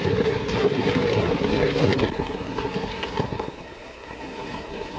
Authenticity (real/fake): fake